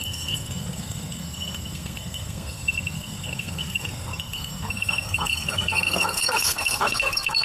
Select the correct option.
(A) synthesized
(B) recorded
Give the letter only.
A